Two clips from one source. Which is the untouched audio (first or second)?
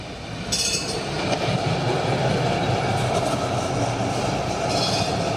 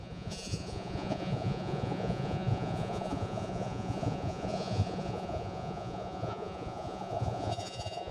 first